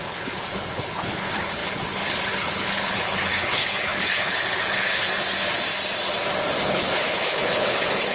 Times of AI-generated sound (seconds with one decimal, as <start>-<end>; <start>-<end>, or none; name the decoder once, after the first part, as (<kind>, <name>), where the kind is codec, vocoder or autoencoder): 0.0-5.1 (codec, HILCodec); 6.6-8.1